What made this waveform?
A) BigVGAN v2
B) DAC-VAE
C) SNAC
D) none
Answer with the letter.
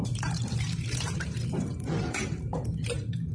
A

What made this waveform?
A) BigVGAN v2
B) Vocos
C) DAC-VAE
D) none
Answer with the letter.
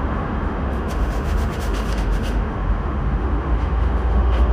C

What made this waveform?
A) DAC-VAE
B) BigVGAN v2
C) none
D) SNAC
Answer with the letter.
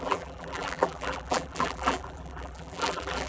B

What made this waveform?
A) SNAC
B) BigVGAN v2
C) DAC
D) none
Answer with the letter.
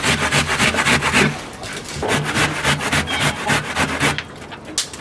D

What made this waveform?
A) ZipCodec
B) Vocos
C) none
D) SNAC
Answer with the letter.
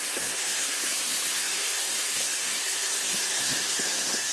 D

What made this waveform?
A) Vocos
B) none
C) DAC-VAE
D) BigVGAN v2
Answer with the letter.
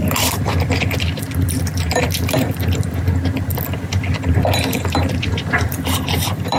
D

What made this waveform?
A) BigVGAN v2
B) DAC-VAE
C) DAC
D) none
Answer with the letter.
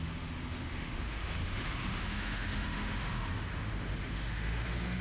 B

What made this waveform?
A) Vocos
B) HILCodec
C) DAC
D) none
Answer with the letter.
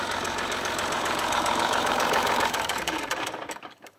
C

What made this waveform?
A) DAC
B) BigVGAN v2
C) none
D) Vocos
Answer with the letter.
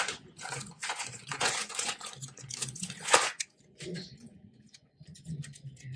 D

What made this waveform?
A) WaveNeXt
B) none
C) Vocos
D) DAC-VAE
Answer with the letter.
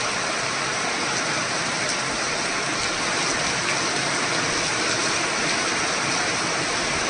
B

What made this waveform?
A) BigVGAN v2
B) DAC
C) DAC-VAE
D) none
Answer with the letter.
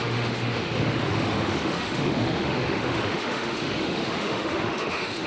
C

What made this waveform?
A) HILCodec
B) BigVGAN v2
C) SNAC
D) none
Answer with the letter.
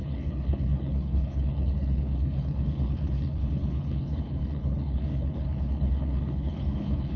A